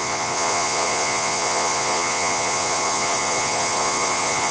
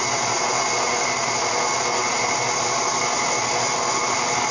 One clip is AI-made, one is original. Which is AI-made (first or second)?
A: first